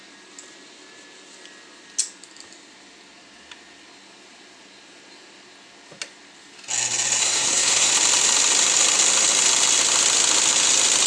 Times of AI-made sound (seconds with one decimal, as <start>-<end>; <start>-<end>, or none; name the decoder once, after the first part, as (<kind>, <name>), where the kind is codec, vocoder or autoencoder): 7.2-7.9 (codec, SNAC)